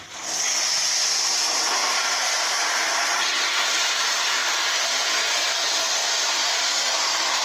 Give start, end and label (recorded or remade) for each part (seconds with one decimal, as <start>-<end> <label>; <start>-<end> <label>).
0.0-1.8 recorded; 1.8-3.2 remade; 3.2-4.4 recorded; 4.4-5.1 remade; 5.1-7.4 recorded

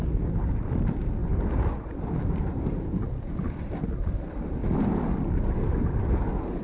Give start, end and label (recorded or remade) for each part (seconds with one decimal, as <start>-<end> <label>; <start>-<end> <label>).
0.0-1.2 remade; 1.2-4.1 recorded; 4.1-4.6 remade; 4.6-6.6 recorded

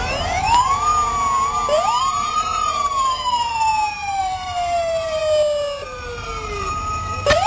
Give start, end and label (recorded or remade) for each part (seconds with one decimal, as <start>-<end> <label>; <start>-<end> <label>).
0.0-0.9 remade; 0.9-2.0 recorded; 2.0-3.7 remade; 3.7-4.2 recorded; 4.2-5.2 remade; 5.2-5.8 recorded; 5.8-7.5 remade

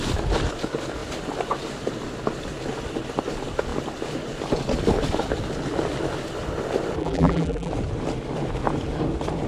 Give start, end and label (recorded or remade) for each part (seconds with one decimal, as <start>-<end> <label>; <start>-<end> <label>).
0.0-7.0 recorded; 7.0-7.7 remade; 7.7-9.5 recorded

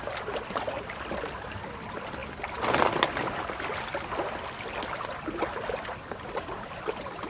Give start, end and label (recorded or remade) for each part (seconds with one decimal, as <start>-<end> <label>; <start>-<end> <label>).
0.0-7.3 recorded

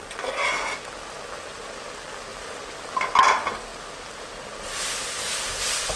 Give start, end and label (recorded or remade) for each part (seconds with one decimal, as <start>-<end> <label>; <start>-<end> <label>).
0.0-2.3 recorded; 2.3-3.0 remade; 3.0-6.0 recorded

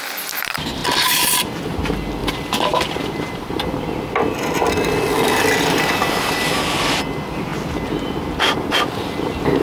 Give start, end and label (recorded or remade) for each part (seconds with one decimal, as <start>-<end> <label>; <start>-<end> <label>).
0.0-0.8 recorded; 0.8-1.8 remade; 1.8-2.2 recorded; 2.2-3.8 remade; 3.8-4.6 recorded; 4.6-5.8 remade; 5.8-9.6 recorded

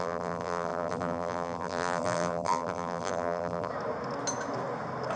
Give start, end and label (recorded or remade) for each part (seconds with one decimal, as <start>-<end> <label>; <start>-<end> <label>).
0.0-3.7 remade; 3.7-5.2 recorded